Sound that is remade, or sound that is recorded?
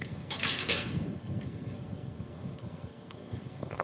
remade